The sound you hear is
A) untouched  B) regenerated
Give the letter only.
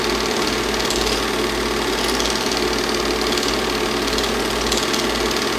A